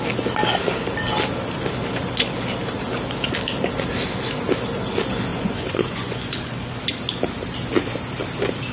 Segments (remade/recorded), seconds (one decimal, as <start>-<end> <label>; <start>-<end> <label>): 0.0-5.3 recorded; 5.3-6.8 remade; 6.8-8.7 recorded